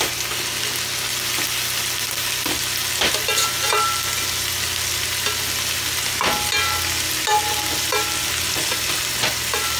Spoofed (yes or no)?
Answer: no